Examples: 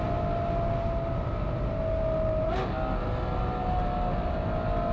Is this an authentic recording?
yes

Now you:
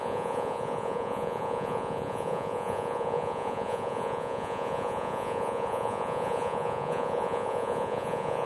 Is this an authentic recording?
no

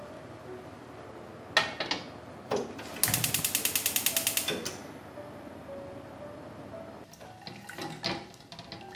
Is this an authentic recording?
yes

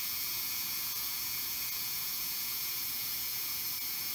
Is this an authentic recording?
no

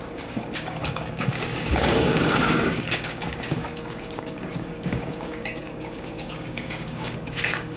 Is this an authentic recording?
no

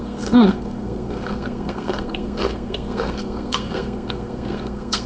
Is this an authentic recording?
no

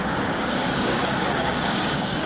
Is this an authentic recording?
no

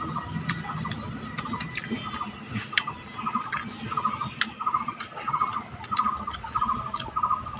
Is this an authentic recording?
yes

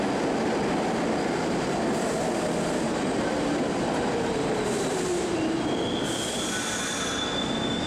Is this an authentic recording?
yes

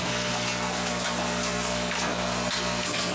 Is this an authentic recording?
no